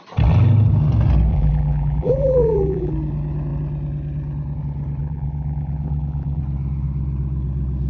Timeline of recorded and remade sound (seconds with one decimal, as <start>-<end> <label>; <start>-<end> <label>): 0.0-1.3 recorded; 1.3-2.9 remade; 2.9-5.0 recorded; 5.0-6.4 remade; 6.4-7.9 recorded